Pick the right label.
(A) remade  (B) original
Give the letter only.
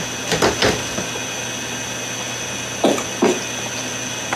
B